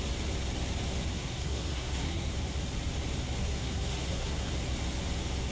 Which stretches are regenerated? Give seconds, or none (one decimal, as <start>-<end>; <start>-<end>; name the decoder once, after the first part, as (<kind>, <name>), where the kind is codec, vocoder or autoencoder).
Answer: 1.1-2.3 (codec, SNAC); 3.4-4.5

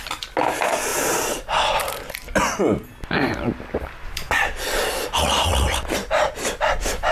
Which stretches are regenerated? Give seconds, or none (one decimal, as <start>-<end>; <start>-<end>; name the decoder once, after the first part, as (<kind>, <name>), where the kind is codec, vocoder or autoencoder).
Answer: none

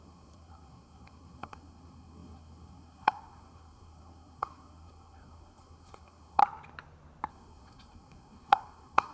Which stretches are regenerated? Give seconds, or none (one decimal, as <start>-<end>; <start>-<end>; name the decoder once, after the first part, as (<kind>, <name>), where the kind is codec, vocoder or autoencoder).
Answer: 0.0-6.4 (codec, SNAC); 7.3-9.1